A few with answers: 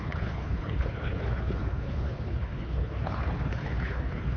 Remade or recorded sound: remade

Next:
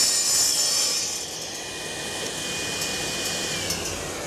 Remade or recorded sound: recorded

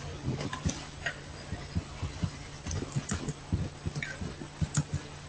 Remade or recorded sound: recorded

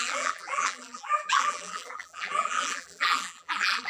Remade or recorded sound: remade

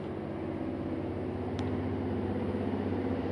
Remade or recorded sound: recorded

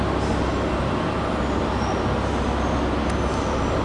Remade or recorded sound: recorded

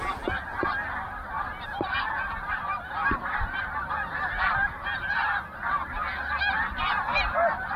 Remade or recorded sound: recorded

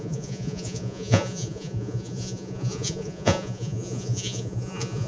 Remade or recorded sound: remade